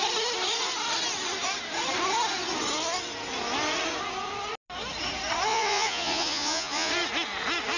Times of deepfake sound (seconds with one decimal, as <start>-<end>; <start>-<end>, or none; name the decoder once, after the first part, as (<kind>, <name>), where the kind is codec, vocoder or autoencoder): 5.5-6.9 (vocoder, Vocos)

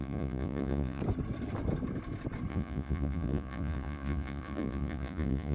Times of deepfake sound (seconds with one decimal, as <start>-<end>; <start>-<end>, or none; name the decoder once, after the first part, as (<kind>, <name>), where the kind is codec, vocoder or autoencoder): 0.0-1.0 (vocoder, Vocos); 2.5-5.5

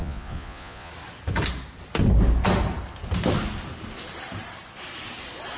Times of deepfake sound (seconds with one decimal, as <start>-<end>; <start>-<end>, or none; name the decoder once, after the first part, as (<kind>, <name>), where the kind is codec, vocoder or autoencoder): 0.0-0.9 (vocoder, Vocos)

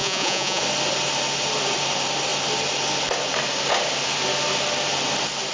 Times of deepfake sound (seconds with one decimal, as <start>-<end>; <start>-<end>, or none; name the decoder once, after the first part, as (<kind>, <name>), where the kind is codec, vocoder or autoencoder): 0.0-0.6 (vocoder, Vocos)

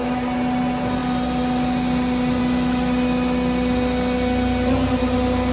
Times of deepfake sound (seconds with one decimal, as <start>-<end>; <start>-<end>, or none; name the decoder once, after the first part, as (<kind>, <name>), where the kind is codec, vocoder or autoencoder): none

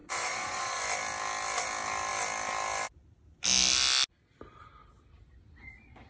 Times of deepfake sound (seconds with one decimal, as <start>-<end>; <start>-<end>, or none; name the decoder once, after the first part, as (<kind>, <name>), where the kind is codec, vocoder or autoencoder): 0.0-0.8 (vocoder, Vocos)

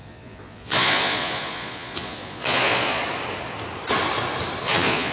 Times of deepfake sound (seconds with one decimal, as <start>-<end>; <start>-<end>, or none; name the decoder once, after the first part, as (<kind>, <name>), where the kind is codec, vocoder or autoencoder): 0.0-3.0 (vocoder, Vocos); 4.6-5.1